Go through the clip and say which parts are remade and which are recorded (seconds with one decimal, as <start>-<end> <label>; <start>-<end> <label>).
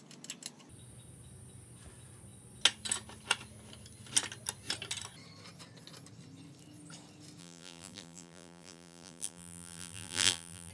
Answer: 0.0-7.4 recorded; 7.4-10.7 remade